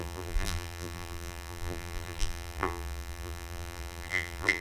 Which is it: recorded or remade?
remade